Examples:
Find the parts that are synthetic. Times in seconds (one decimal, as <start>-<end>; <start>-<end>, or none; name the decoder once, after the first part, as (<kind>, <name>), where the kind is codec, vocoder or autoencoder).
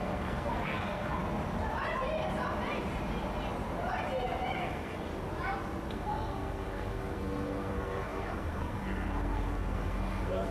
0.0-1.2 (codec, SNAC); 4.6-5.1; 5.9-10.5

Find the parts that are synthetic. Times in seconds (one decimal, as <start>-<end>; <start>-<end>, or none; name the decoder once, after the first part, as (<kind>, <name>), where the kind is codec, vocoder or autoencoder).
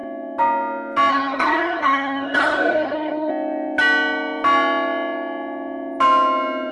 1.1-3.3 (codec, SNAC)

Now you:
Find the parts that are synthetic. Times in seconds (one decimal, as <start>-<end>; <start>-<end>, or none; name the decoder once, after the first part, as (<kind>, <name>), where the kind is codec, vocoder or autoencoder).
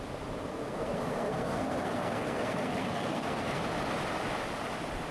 0.5-3.6 (codec, SNAC)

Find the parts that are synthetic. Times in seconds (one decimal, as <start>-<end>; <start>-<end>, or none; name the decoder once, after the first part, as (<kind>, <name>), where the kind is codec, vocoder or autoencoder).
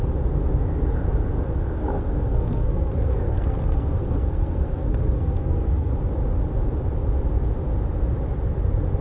1.8-5.9 (codec, SNAC)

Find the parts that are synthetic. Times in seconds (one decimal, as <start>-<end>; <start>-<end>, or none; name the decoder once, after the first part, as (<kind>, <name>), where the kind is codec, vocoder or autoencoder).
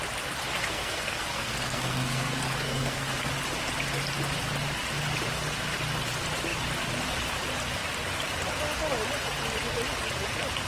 0.6-3.3 (codec, SNAC)